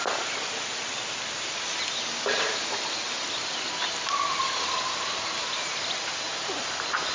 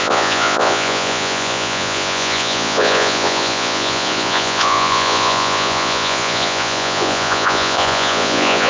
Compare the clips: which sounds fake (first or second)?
second